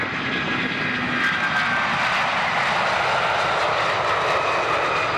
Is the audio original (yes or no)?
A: yes